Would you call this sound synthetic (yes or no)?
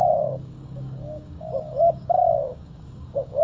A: yes